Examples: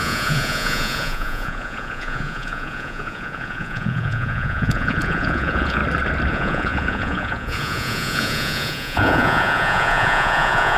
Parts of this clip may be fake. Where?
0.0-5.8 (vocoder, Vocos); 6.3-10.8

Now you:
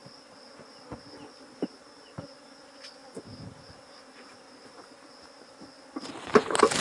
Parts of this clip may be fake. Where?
none

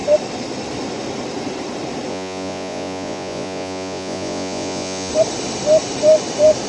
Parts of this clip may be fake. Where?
2.1-5.1 (vocoder, Vocos)

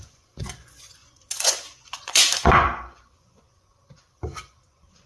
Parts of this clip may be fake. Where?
0.0-5.1 (vocoder, Vocos)

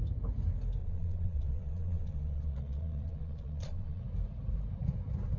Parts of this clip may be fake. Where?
0.8-4.0 (vocoder, Vocos)

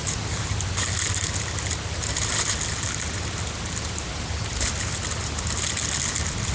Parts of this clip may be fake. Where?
none

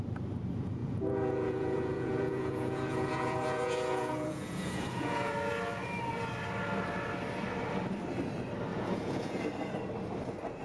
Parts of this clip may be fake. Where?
0.8-5.3 (vocoder, Vocos); 8.7-9.4